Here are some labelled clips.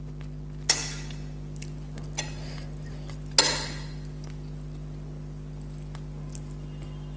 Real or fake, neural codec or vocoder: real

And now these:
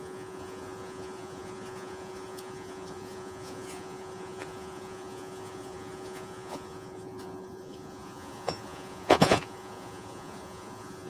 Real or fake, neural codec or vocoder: fake, vocoder, Vocos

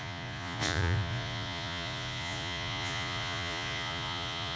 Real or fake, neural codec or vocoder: fake, vocoder, Vocos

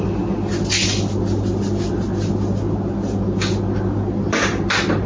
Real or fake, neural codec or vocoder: real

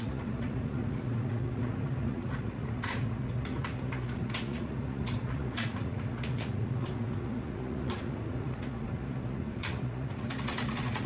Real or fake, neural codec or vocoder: fake, vocoder, Vocos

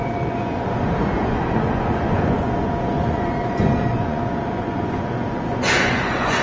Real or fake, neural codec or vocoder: fake, vocoder, Vocos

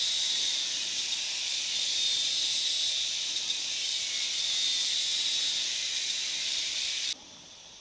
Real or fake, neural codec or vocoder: real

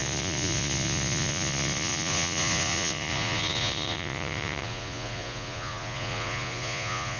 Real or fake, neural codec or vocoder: fake, vocoder, Vocos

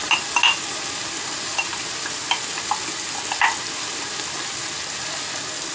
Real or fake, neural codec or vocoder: real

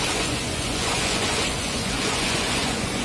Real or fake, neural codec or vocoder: fake, vocoder, Vocos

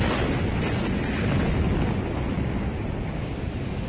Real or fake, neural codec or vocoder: real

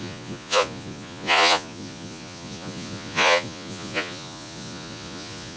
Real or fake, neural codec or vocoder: fake, vocoder, Vocos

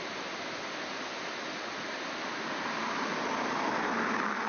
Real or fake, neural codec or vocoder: real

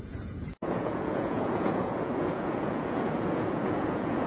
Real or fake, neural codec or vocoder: fake, vocoder, Vocos